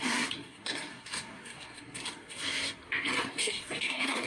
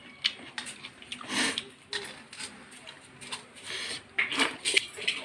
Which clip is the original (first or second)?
second